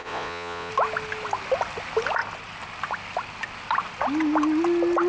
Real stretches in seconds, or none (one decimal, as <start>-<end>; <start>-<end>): 0.7-5.1